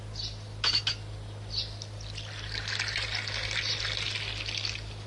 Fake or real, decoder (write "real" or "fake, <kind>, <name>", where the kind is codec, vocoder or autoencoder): real